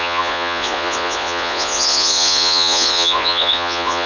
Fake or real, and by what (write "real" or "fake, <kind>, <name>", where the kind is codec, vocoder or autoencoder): fake, vocoder, Vocos